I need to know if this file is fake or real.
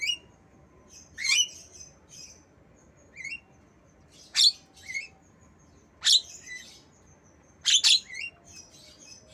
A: real